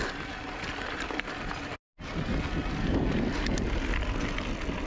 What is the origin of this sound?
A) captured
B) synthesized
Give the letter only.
A